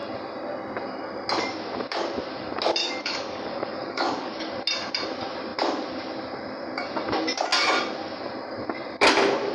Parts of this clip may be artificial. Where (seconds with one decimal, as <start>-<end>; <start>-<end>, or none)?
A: 2.8-4.5